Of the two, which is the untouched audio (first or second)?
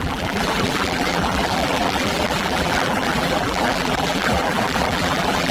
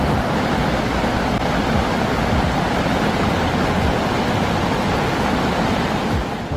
second